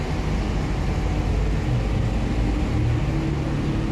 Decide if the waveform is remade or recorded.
recorded